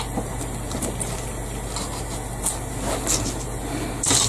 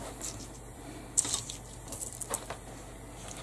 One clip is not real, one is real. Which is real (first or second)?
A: first